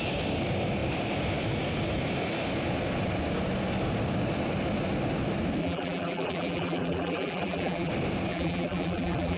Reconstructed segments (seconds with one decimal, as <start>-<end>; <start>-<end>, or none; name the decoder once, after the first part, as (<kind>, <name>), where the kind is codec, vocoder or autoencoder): 5.6-7.9 (vocoder, BigVGAN v2); 8.3-9.4